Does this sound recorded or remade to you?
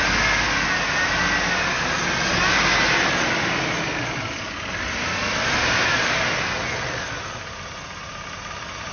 recorded